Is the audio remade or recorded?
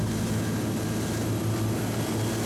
recorded